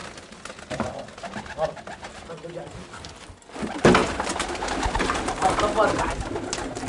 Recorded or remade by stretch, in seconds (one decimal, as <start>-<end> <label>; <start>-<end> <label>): 0.0-6.9 recorded